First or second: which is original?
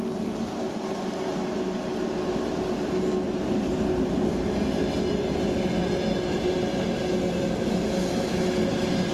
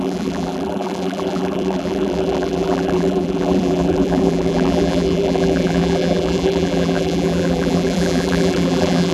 first